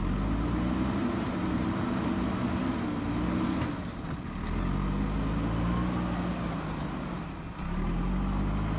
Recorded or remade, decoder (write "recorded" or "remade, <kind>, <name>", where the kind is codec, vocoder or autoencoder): recorded